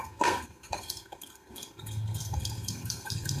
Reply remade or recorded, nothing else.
remade